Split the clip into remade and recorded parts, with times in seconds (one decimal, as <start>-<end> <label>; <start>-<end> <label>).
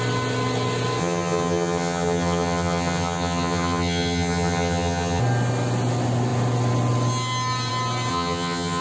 0.0-1.0 recorded; 1.0-5.2 remade; 5.2-8.1 recorded; 8.1-8.8 remade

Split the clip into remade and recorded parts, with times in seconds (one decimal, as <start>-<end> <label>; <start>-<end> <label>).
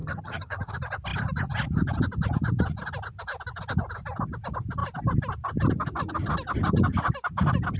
0.0-0.7 remade; 0.7-7.8 recorded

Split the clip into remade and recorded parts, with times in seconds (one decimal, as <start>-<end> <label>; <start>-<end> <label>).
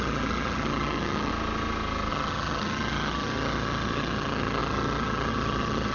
0.0-1.3 remade; 1.3-2.1 recorded; 2.1-5.9 remade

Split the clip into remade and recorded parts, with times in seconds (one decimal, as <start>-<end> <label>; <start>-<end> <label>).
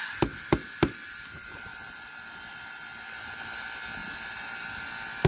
0.0-5.3 recorded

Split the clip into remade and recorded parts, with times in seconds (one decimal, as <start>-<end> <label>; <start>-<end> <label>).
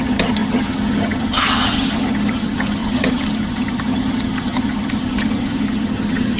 0.0-6.4 remade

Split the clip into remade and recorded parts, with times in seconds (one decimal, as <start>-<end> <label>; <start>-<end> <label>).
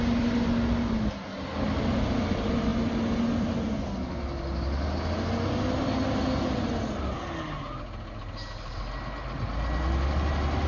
0.0-10.7 recorded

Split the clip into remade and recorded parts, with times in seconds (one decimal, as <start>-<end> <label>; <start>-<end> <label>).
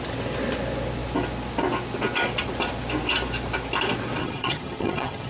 0.0-4.2 recorded; 4.2-5.3 remade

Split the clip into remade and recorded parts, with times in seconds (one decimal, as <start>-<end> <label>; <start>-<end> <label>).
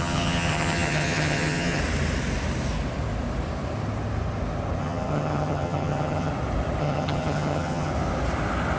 0.0-1.8 remade; 1.8-4.8 recorded; 4.8-6.3 remade; 6.3-6.8 recorded; 6.8-7.9 remade; 7.9-8.8 recorded